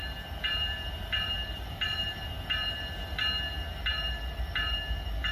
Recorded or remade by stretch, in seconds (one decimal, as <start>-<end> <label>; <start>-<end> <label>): 0.0-3.2 remade; 3.2-3.9 recorded; 3.9-5.3 remade